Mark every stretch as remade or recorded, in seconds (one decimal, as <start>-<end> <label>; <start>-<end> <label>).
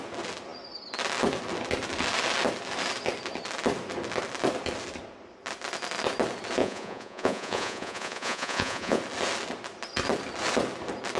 0.0-6.6 recorded; 6.6-9.0 remade; 9.0-11.2 recorded